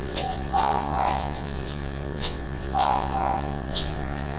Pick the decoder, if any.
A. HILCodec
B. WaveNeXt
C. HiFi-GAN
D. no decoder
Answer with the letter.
B